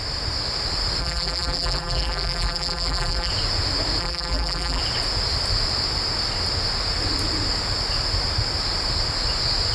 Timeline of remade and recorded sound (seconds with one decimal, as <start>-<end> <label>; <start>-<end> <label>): 0.0-1.0 recorded; 1.0-3.3 remade; 3.3-4.0 recorded; 4.0-4.8 remade; 4.8-9.7 recorded